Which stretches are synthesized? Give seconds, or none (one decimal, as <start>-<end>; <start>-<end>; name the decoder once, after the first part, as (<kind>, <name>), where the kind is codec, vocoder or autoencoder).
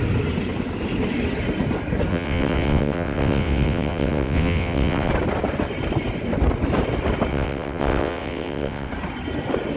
2.1-5.1 (vocoder, WaveNeXt); 7.3-8.9